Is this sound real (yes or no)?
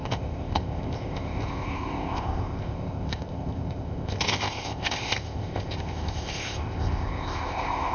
no